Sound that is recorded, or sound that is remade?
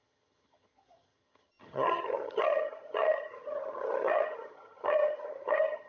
remade